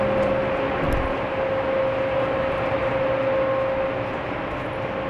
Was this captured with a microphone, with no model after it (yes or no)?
yes